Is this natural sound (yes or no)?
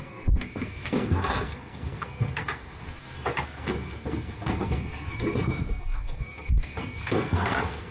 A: no